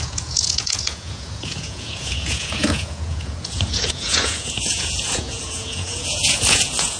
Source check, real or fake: fake